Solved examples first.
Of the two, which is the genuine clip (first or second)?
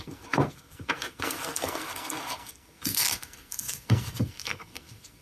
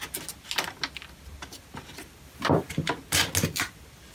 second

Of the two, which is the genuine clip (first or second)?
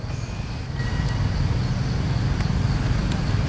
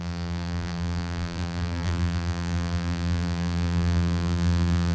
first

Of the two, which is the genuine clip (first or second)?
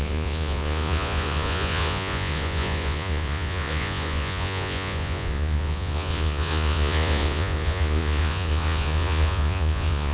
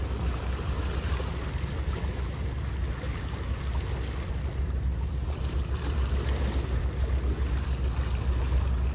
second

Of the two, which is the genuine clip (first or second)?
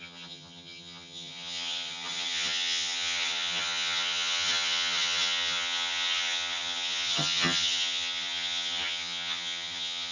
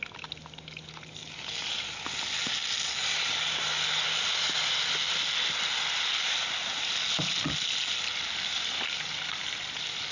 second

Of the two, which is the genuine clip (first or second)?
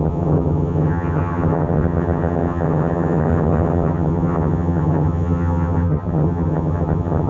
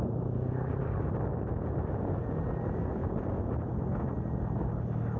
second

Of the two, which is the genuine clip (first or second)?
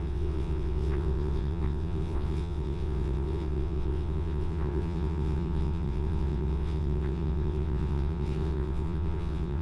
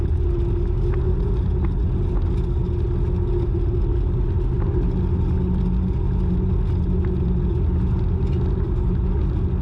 second